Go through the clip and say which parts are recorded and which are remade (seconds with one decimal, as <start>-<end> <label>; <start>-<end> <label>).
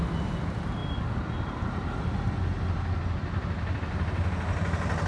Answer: 0.0-5.1 recorded